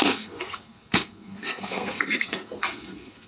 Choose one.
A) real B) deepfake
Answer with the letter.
B